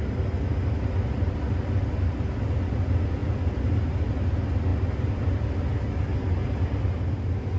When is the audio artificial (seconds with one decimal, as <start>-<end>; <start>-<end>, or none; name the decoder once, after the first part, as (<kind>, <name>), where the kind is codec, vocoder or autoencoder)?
1.8-2.4 (vocoder, BigVGAN v2)